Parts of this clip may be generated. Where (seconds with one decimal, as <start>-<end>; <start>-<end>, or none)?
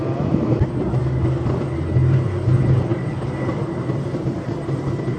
1.0-1.6